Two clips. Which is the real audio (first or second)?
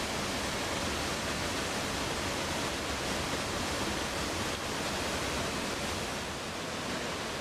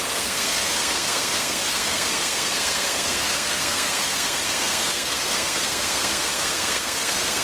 first